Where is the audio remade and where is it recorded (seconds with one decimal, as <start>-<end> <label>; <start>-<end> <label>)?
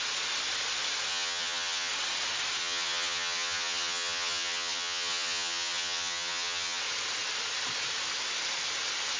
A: 0.0-1.1 recorded; 1.1-1.9 remade; 1.9-2.6 recorded; 2.6-6.8 remade; 6.8-9.2 recorded